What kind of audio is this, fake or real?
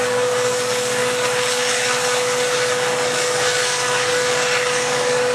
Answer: fake